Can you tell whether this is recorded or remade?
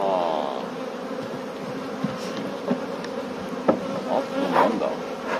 recorded